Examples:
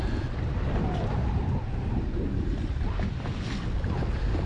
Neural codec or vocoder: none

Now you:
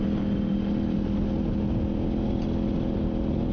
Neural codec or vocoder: none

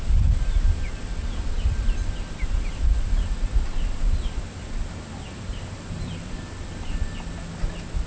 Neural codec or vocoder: none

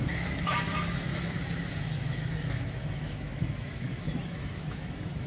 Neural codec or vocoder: autoencoder, DAC-VAE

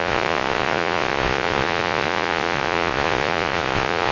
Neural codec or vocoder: vocoder, Vocos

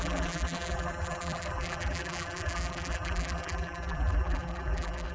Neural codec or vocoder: vocoder, BigVGAN v2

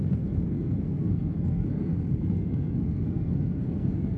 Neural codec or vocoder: codec, SNAC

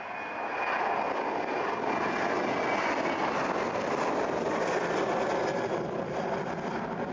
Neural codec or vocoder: none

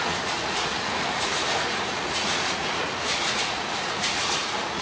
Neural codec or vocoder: vocoder, Vocos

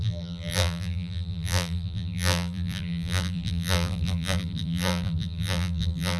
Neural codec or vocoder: vocoder, BigVGAN v2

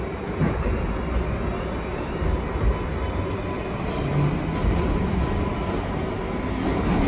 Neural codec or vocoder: none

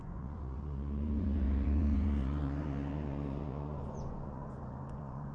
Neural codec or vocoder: vocoder, Vocos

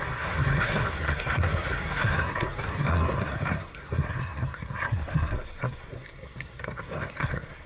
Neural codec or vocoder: codec, SNAC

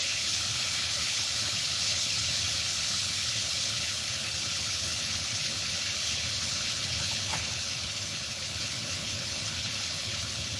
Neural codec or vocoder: codec, HILCodec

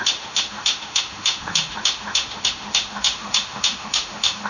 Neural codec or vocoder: autoencoder, DAC-VAE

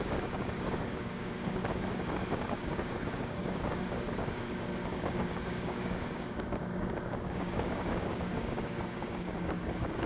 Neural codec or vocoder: codec, DAC